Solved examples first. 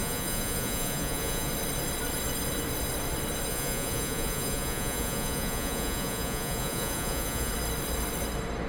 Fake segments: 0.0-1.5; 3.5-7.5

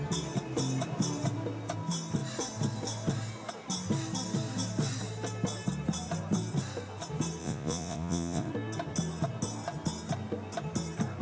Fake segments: 7.4-8.5